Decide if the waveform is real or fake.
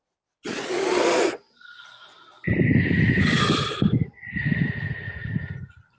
fake